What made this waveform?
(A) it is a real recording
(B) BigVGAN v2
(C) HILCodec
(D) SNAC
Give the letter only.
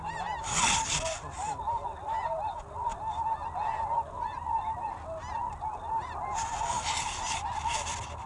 A